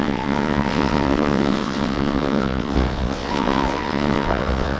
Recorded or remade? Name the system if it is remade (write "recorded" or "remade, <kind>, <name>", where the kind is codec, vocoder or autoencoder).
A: remade, vocoder, WaveNeXt